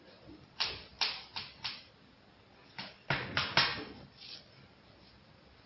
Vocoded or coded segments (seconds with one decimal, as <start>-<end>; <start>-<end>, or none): none